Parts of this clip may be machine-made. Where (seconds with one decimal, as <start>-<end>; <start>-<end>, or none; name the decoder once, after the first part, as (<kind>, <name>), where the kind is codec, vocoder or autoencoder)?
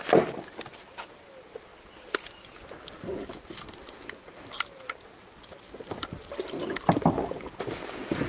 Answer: 0.0-1.7 (vocoder, BigVGAN v2); 3.9-8.3